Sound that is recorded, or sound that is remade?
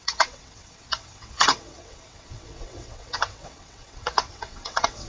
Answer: remade